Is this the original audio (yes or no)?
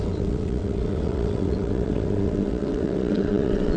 no